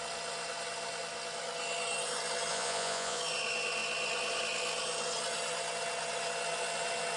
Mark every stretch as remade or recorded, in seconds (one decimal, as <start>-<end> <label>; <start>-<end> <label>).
0.0-2.5 recorded; 2.5-3.2 remade; 3.2-7.2 recorded